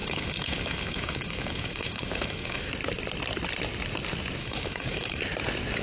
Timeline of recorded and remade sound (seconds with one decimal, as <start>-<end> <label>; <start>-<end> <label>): 0.0-2.7 remade; 2.7-4.4 recorded; 4.4-5.2 remade; 5.2-5.8 recorded

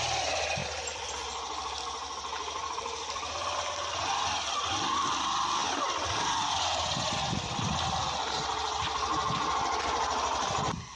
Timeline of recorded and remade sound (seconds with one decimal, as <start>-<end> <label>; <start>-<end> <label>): 0.0-0.6 recorded; 0.6-1.1 remade; 1.1-5.6 recorded; 5.6-7.5 remade; 7.5-11.0 recorded

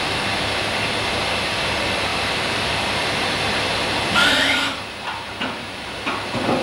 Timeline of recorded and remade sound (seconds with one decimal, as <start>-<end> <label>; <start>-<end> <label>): 0.0-2.1 recorded; 2.1-5.9 remade; 5.9-6.6 recorded

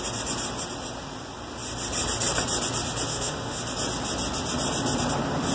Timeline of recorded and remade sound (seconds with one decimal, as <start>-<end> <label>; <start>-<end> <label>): 0.0-3.1 recorded; 3.1-3.6 remade; 3.6-5.5 recorded

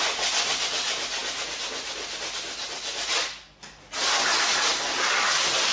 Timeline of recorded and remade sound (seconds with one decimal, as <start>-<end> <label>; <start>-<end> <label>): 0.0-5.7 recorded

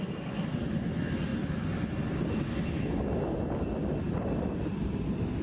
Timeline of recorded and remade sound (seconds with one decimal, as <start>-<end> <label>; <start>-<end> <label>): 0.0-5.4 recorded

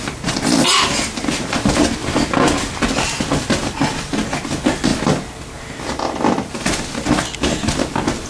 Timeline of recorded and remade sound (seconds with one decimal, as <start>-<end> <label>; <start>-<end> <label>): 0.0-8.3 recorded